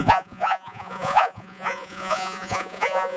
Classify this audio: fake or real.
fake